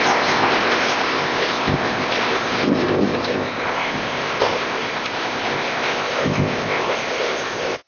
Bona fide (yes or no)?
no